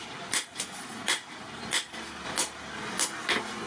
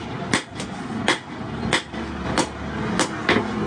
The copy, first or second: first